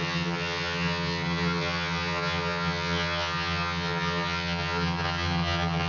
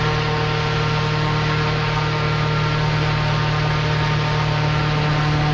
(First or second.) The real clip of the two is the second